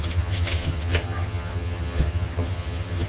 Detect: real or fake fake